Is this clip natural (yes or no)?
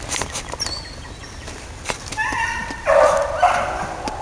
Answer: yes